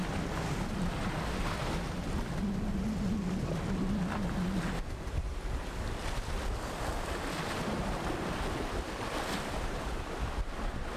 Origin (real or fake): real